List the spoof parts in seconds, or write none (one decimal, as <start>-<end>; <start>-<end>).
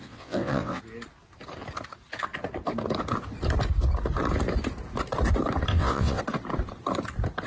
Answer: 0.0-0.8; 5.7-6.2